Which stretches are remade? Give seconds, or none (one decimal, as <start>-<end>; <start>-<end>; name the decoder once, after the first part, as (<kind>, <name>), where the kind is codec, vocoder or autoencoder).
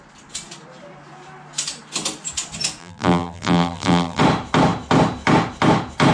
2.8-4.2 (vocoder, BigVGAN v2)